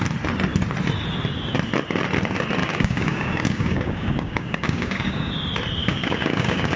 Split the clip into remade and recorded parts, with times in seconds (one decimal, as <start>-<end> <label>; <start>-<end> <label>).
0.0-2.6 recorded; 2.6-5.3 remade; 5.3-5.8 recorded; 5.8-6.8 remade

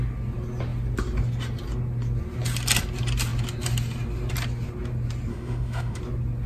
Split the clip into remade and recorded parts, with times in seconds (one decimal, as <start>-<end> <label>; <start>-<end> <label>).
0.0-5.3 recorded; 5.3-6.0 remade; 6.0-6.5 recorded

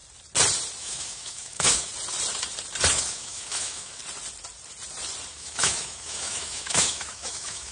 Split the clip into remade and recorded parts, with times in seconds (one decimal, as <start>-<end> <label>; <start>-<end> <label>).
0.0-0.8 recorded; 0.8-1.9 remade; 1.9-2.9 recorded; 2.9-4.0 remade; 4.0-5.3 recorded; 5.3-7.7 remade

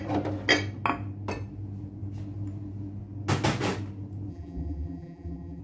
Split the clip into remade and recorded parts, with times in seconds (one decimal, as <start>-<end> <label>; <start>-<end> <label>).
0.0-4.3 recorded; 4.3-5.6 remade

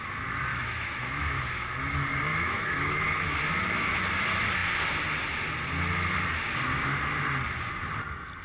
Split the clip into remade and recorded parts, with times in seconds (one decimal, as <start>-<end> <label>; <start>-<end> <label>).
0.0-0.5 recorded; 0.5-1.0 remade; 1.0-2.3 recorded; 2.3-3.4 remade; 3.4-8.4 recorded

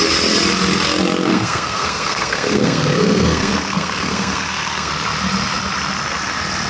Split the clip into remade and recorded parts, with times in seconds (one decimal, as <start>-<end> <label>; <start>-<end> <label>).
0.0-1.3 recorded; 1.3-4.9 remade; 4.9-6.7 recorded

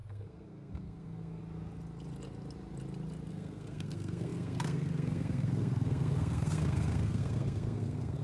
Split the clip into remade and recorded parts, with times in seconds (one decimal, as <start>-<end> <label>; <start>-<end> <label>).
0.0-1.4 remade; 1.4-3.3 recorded; 3.3-8.2 remade